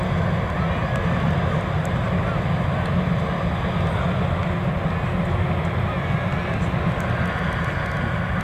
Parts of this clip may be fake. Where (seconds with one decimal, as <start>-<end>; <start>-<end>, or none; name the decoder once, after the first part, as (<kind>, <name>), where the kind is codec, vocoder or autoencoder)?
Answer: none